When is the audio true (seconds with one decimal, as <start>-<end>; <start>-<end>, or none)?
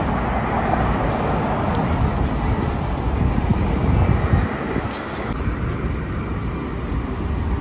0.0-7.6